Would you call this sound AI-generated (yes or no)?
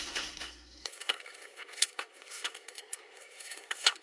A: yes